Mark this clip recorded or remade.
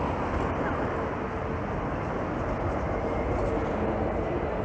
recorded